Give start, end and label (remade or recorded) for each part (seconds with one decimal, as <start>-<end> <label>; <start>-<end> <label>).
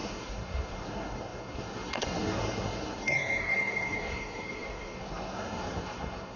0.0-6.4 remade